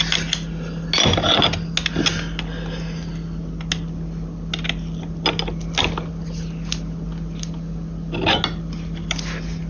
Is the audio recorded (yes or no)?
yes